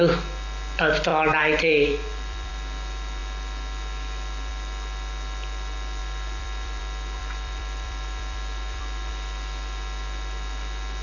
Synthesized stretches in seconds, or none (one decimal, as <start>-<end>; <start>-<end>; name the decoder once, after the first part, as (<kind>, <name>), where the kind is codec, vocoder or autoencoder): 1.1-2.5 (vocoder, BigVGAN v2); 6.0-6.8; 7.2-9.1